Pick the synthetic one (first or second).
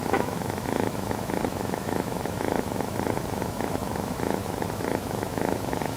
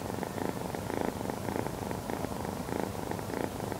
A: first